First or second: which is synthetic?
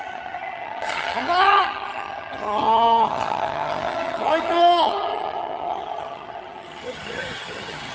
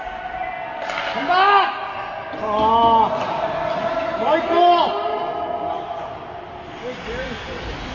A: first